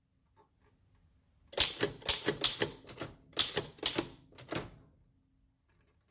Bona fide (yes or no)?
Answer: yes